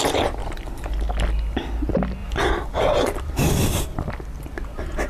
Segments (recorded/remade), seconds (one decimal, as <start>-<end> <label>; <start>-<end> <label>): 0.0-2.2 recorded; 2.2-3.6 remade; 3.6-5.1 recorded